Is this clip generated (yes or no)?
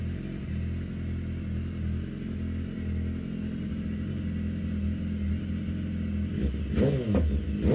no